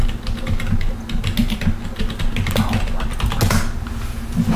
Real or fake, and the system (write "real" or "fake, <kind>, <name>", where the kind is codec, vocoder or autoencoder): real